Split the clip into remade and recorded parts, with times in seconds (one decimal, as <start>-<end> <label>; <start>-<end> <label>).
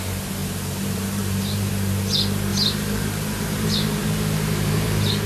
0.0-0.4 recorded; 0.4-1.7 remade; 1.7-2.5 recorded; 2.5-5.3 remade